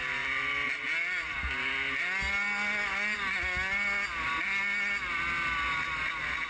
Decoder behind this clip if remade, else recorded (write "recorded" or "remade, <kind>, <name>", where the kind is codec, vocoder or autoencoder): recorded